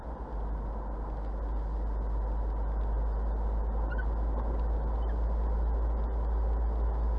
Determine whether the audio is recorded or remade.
recorded